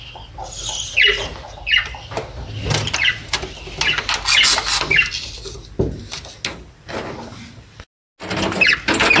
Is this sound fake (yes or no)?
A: no